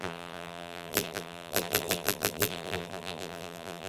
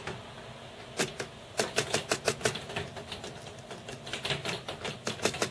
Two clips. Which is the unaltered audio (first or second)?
second